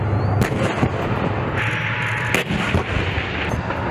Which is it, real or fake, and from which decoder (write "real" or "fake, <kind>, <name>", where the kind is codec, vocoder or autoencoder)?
real